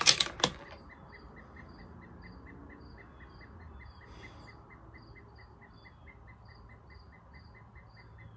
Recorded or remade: recorded